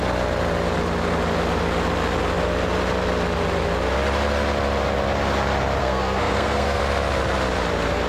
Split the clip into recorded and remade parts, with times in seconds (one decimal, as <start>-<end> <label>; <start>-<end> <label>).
0.0-5.8 recorded; 5.8-6.8 remade; 6.8-8.1 recorded